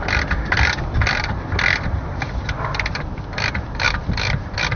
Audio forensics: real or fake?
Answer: real